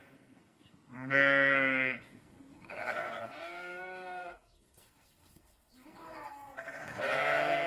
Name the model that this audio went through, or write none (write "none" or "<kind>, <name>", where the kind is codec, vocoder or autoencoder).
codec, SNAC